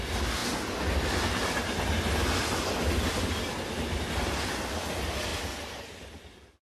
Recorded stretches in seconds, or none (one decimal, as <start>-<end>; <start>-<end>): 0.0-6.7